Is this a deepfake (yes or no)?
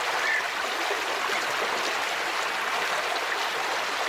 no